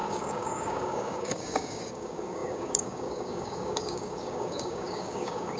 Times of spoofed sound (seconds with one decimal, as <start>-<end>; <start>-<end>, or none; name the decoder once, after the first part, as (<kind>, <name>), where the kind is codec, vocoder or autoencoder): 0.0-5.6 (codec, DAC)